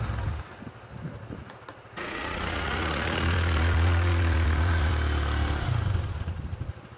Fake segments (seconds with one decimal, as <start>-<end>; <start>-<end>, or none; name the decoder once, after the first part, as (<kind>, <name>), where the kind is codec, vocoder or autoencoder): 1.4-4.9 (vocoder, Vocos)